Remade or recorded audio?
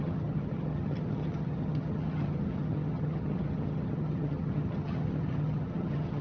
remade